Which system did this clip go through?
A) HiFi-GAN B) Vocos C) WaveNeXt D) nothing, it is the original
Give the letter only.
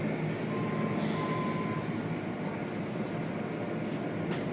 D